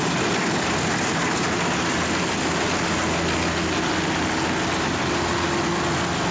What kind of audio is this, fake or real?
real